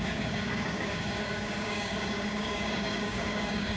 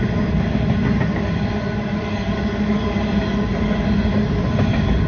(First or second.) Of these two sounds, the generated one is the first